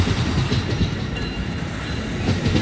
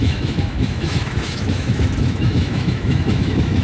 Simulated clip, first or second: second